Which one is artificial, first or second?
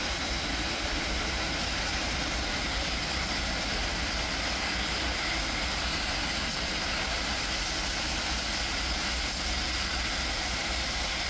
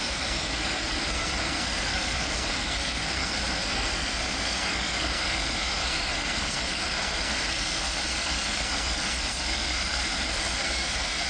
second